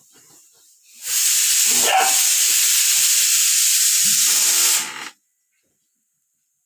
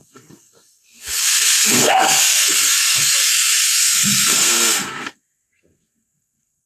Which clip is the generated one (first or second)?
second